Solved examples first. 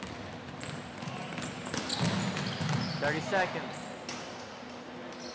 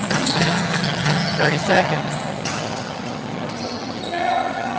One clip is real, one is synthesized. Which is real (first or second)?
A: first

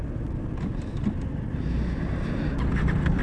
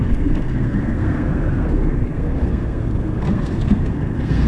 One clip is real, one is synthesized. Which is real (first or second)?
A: first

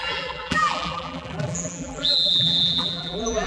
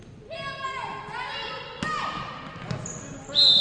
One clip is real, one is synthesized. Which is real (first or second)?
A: second